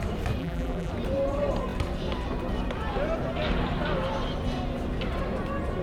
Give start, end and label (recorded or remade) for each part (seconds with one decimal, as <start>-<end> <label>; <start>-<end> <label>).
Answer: 0.0-0.4 recorded; 0.4-0.9 remade; 0.9-5.8 recorded